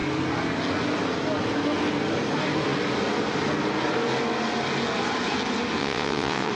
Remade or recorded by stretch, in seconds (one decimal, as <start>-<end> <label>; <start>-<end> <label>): 0.0-5.8 recorded; 5.8-6.5 remade